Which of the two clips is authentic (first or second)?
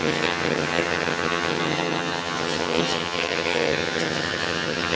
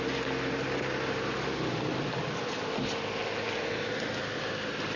second